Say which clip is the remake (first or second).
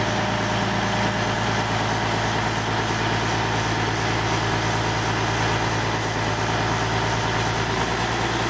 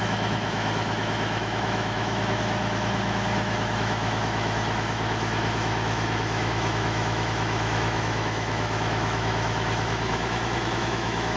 second